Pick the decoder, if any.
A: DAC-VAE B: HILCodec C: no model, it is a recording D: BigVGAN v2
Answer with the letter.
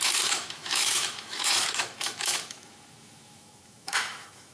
A